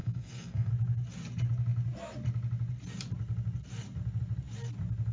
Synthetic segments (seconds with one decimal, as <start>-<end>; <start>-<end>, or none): 0.0-0.7